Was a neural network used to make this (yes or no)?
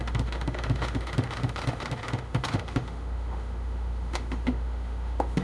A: yes